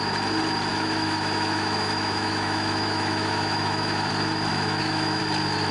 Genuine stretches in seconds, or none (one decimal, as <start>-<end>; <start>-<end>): 0.0-0.7; 4.1-4.5; 5.2-5.7